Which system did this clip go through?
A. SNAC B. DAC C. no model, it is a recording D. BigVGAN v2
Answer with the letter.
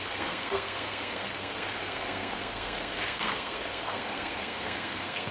A